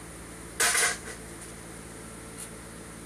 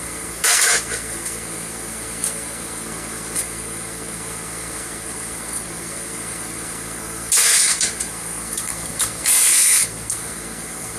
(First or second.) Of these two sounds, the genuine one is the first